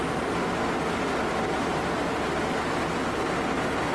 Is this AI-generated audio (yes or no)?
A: no